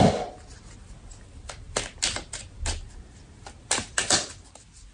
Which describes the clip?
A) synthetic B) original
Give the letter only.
B